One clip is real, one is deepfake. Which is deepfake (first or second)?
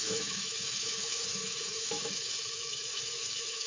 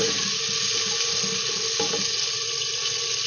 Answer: first